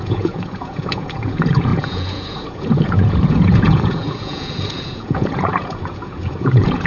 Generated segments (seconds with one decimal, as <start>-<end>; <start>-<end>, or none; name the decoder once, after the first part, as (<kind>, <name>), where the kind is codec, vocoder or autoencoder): 0.0-6.9 (vocoder, Vocos)